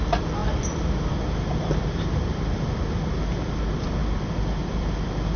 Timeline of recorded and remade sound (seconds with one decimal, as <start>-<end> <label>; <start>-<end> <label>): 0.0-5.4 recorded